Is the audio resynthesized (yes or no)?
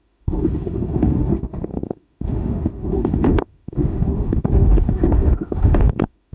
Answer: yes